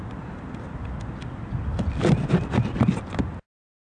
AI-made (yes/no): no